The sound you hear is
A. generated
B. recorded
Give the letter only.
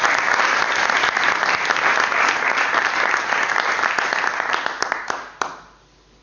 B